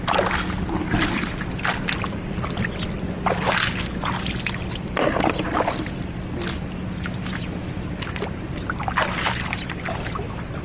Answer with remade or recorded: recorded